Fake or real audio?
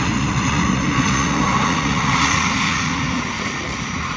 fake